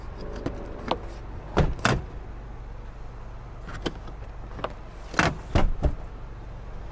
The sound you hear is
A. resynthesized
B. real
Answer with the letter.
B